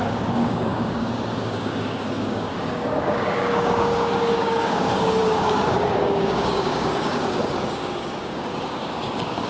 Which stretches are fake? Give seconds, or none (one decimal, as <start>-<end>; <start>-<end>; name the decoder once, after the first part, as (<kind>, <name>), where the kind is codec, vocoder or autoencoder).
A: 0.0-9.5 (codec, DAC)